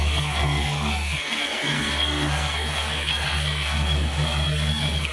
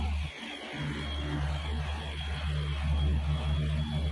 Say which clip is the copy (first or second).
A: first